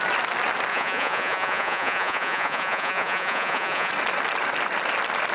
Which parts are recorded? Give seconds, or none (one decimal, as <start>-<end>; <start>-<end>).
0.0-0.7; 3.9-5.3